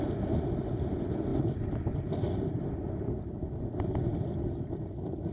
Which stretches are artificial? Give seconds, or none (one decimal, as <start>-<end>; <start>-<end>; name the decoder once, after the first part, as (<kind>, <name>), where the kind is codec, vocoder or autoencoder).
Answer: none